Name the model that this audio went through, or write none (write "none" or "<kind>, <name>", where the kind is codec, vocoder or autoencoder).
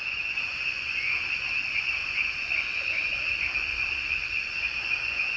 vocoder, Vocos